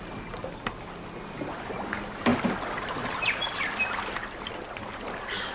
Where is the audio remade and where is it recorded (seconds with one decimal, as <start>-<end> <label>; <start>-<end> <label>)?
0.0-5.5 recorded